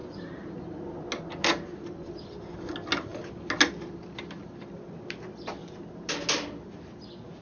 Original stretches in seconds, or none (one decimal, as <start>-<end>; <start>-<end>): 0.0-7.4

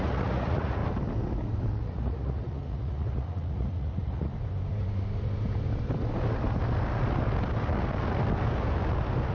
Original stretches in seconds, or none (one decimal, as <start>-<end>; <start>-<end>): 0.8-1.7; 4.3-9.3